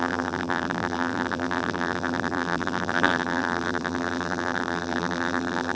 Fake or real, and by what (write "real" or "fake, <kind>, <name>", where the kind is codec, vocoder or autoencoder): fake, vocoder, BigVGAN v2